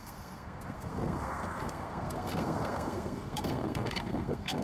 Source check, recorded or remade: remade